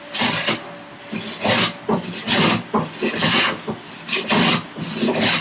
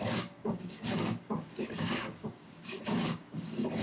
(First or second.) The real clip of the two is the first